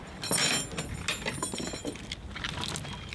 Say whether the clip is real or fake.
real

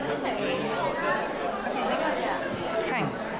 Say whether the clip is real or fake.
real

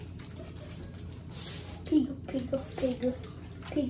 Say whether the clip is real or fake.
real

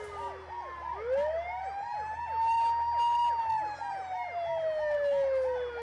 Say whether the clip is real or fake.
real